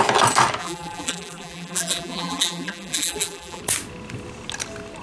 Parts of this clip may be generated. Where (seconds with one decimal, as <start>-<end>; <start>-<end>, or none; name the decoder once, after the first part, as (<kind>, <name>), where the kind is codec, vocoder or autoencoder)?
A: 0.6-3.6 (vocoder, BigVGAN v2)